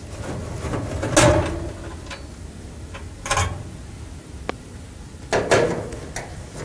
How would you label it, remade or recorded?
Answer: recorded